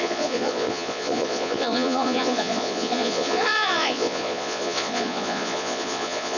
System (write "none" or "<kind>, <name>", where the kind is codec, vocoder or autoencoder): vocoder, Vocos